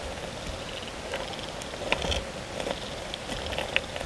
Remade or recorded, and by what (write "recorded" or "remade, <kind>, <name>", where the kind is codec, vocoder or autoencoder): recorded